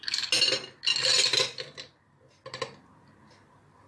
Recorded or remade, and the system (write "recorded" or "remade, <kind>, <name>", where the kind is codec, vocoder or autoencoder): recorded